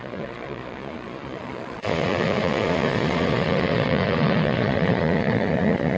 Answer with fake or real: fake